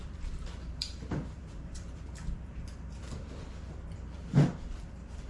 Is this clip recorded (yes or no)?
no